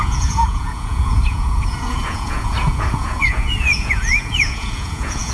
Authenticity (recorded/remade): remade